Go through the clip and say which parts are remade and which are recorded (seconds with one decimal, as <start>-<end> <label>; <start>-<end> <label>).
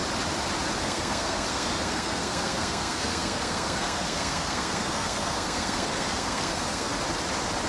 0.0-0.8 recorded; 0.8-6.9 remade; 6.9-7.7 recorded